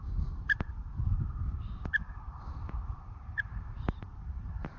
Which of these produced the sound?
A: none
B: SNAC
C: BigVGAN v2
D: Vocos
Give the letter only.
C